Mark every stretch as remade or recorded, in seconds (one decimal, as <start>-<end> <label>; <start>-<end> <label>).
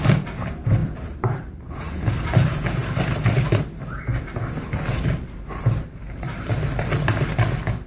0.0-0.8 recorded; 0.8-1.9 remade; 1.9-6.0 recorded; 6.0-6.5 remade; 6.5-7.9 recorded